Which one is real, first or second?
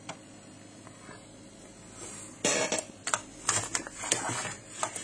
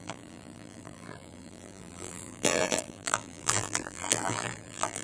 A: first